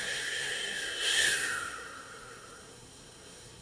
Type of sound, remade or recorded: remade